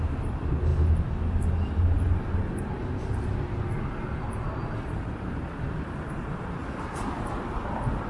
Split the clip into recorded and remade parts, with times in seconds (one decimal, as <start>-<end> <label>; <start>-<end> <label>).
0.0-0.7 remade; 0.7-4.9 recorded; 4.9-8.1 remade